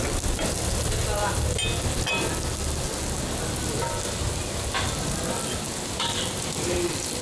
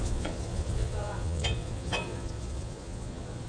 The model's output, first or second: second